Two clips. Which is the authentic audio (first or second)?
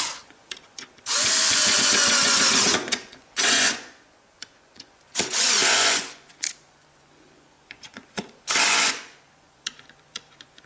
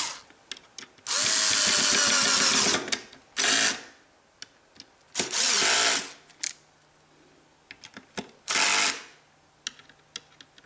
second